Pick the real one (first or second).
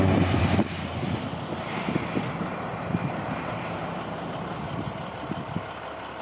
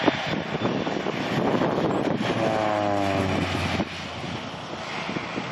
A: second